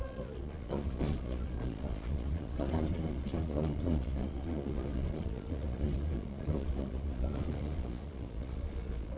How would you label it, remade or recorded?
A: remade